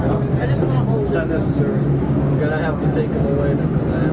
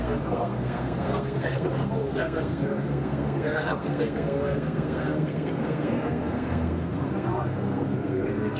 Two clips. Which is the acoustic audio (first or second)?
first